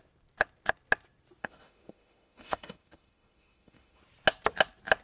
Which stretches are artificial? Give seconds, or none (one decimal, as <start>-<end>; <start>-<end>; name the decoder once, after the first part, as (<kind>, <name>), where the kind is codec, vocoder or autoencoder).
1.4-4.0 (autoencoder, DAC-VAE)